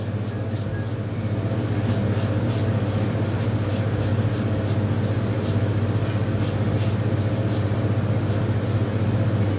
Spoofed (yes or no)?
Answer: no